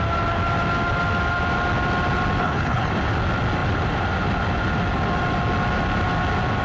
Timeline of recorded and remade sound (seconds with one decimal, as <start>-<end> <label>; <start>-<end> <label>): 0.0-2.4 recorded; 2.4-2.9 remade; 2.9-6.6 recorded